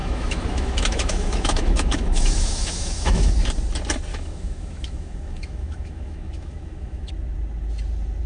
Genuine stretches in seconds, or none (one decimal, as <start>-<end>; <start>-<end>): 3.3-4.1; 7.1-8.3